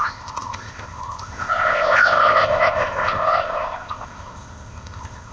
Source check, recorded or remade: remade